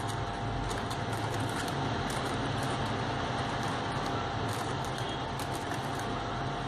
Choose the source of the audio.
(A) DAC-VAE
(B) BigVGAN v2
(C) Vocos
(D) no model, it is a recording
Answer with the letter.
D